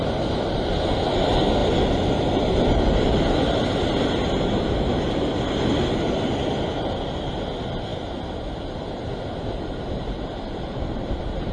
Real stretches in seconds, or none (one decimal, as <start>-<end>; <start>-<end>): 0.0-11.5